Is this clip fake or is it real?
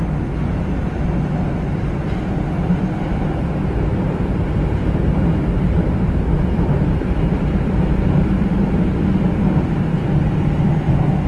fake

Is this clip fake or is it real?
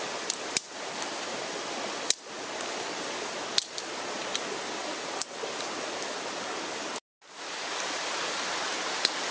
real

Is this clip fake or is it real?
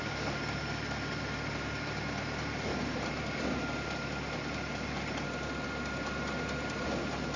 real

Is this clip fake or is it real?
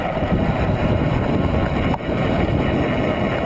fake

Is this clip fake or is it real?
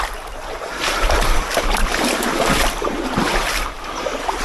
fake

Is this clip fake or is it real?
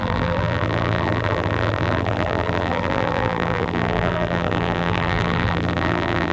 fake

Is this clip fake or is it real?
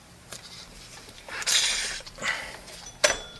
fake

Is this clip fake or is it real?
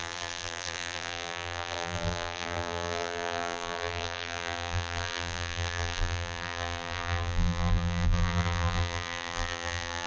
fake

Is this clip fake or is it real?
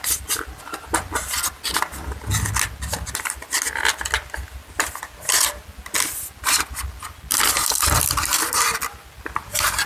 real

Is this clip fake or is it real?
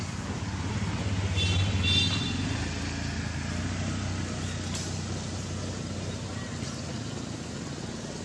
real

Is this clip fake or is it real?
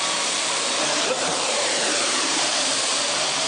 fake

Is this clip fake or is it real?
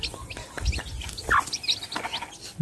real